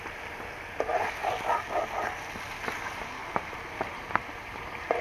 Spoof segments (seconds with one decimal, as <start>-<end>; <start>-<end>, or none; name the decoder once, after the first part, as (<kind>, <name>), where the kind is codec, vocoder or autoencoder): 3.2-5.0 (vocoder, BigVGAN v2)